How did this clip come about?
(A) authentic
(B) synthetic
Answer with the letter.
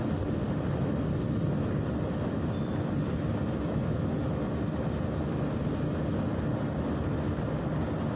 A